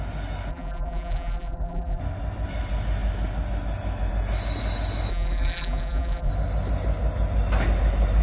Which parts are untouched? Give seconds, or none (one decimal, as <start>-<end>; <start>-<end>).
0.0-0.5; 2.0-5.1; 6.3-8.2